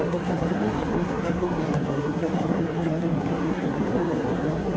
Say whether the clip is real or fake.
fake